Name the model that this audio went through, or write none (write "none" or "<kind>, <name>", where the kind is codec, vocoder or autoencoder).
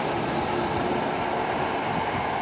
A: none